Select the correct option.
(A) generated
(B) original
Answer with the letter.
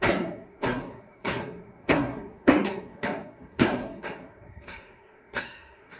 A